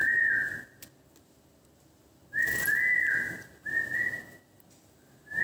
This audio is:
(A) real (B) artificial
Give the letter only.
A